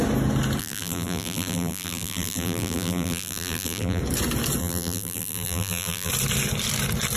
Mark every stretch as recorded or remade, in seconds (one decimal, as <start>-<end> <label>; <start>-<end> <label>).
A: 0.0-0.6 recorded; 0.6-4.0 remade; 4.0-4.6 recorded; 4.6-6.1 remade; 6.1-7.2 recorded

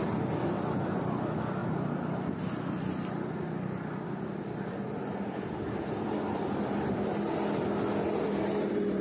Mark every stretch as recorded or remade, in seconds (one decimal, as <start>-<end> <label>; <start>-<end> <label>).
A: 0.0-0.8 remade; 0.8-1.6 recorded; 1.6-6.9 remade; 6.9-9.0 recorded